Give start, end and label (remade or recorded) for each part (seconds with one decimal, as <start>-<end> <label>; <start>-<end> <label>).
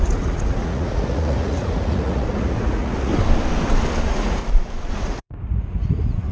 0.0-3.1 remade; 3.1-4.0 recorded; 4.0-4.4 remade; 4.4-4.9 recorded; 4.9-6.3 remade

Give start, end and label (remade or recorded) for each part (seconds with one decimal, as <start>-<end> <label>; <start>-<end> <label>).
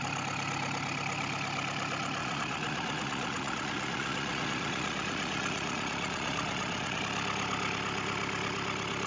0.0-2.2 recorded; 2.2-7.0 remade; 7.0-9.1 recorded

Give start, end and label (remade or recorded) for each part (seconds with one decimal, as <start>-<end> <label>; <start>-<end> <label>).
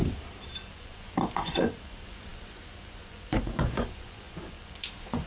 0.0-0.7 recorded; 0.7-5.3 remade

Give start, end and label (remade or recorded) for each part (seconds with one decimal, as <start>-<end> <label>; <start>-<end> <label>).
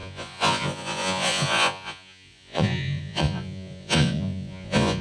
0.0-5.0 remade